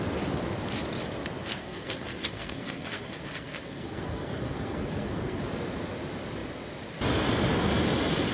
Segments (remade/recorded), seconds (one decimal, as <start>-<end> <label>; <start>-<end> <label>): 0.0-1.5 recorded; 1.5-5.4 remade; 5.4-8.3 recorded